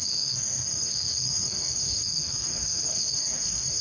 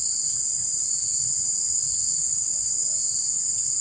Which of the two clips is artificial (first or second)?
first